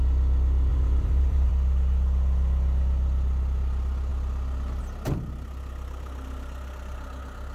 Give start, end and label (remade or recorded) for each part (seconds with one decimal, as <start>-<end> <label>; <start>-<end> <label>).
0.0-0.7 recorded; 0.7-1.5 remade; 1.5-7.5 recorded